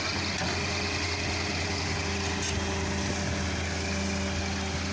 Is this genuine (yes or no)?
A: yes